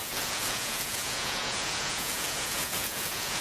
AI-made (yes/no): yes